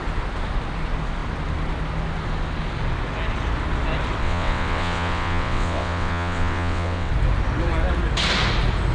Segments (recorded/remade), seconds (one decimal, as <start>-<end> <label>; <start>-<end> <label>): 0.0-4.2 recorded; 4.2-7.1 remade; 7.1-8.9 recorded